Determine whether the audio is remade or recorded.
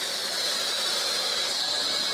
remade